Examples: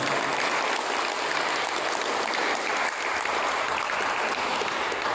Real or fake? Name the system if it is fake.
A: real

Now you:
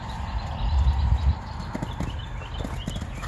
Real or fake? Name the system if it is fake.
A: real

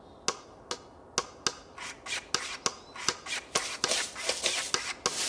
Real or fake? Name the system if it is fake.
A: real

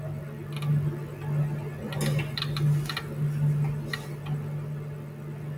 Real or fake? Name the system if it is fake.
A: real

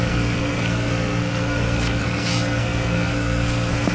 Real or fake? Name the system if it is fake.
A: fake, codec, SNAC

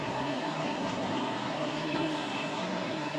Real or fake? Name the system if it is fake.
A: fake, codec, SNAC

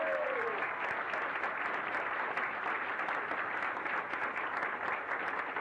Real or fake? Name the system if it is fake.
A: real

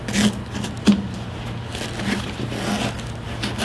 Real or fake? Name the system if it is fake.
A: real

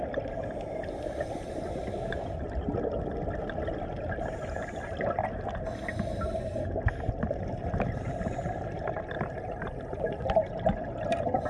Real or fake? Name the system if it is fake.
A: real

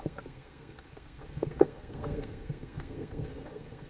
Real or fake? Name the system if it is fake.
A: fake, codec, SNAC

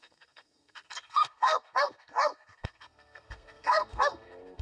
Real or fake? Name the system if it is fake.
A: fake, codec, SNAC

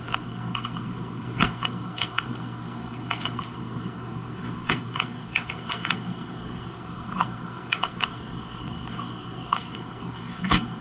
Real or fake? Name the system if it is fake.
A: fake, codec, SNAC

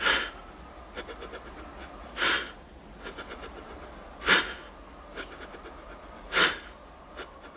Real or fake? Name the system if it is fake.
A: real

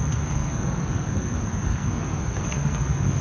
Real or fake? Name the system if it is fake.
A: fake, codec, SNAC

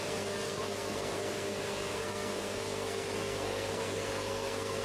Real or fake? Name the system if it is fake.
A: fake, codec, SNAC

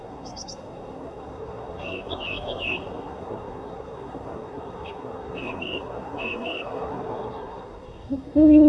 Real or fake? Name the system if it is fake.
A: fake, codec, SNAC